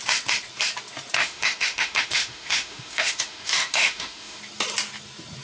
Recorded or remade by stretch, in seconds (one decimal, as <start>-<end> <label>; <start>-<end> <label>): 0.0-1.2 recorded; 1.2-4.4 remade; 4.4-5.4 recorded